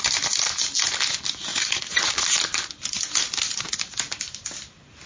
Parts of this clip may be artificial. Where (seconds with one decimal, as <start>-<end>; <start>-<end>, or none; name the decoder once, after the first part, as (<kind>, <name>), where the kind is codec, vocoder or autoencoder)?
1.5-2.1 (vocoder, Vocos)